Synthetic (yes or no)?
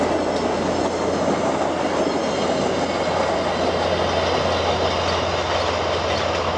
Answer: no